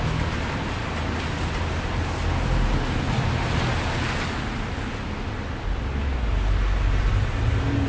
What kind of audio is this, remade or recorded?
recorded